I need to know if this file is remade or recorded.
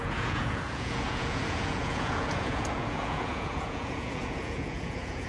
remade